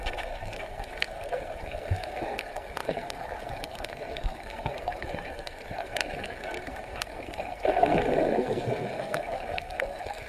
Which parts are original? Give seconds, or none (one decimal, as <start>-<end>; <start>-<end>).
none

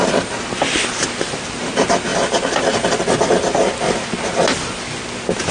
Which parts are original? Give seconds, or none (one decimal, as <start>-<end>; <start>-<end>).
0.0-5.5